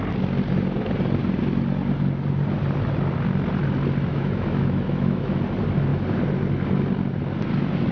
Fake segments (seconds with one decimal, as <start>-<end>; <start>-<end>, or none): 4.1-5.4